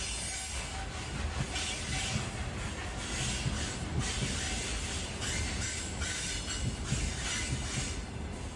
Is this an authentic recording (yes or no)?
yes